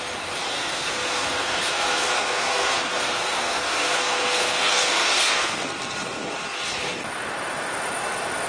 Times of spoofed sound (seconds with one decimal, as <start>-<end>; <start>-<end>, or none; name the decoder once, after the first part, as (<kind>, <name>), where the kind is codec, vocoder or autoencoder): 0.5-5.6 (codec, SNAC)